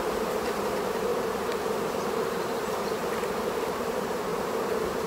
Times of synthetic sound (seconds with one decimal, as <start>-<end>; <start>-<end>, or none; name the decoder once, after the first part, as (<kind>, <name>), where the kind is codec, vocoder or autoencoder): 0.0-1.1 (vocoder, BigVGAN v2); 1.8-3.0; 3.8-5.1